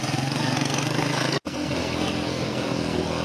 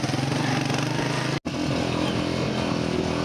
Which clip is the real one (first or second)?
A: second